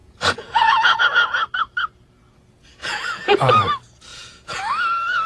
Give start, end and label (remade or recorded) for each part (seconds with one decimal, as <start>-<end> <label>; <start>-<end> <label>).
0.0-1.0 remade; 1.0-2.8 recorded; 2.8-3.5 remade; 3.5-4.1 recorded; 4.1-4.6 remade; 4.6-5.3 recorded